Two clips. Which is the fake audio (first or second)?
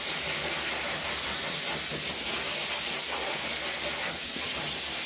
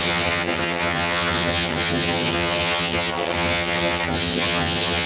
second